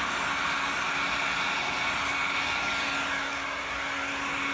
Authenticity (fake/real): real